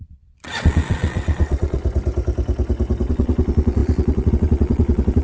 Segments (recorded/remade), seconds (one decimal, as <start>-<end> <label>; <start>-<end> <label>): 0.0-1.8 remade; 1.8-3.1 recorded; 3.1-5.2 remade